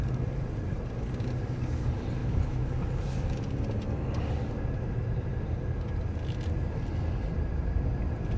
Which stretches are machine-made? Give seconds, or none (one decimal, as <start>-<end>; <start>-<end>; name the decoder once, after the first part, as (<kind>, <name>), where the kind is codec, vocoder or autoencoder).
2.2-2.7 (autoencoder, DAC-VAE)